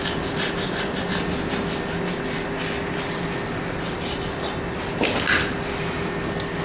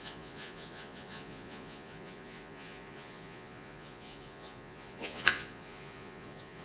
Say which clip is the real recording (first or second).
first